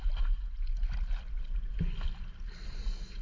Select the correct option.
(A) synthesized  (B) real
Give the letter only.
B